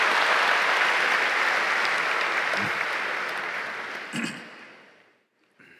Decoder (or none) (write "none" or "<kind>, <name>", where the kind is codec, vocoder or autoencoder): none